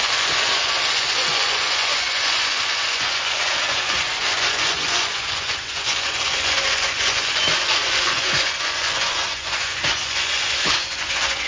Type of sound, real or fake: fake